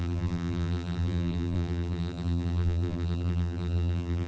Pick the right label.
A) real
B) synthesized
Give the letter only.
B